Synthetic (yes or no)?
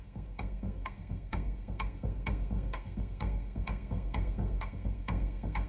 yes